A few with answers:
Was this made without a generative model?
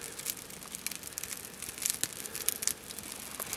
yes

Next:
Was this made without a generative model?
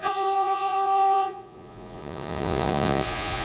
no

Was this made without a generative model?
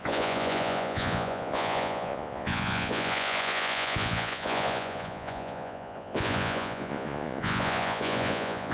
no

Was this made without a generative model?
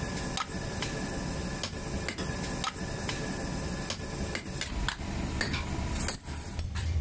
yes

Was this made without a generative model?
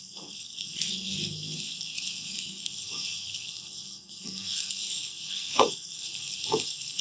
no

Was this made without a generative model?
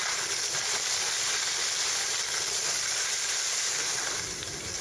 yes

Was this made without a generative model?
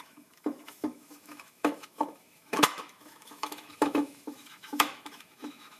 no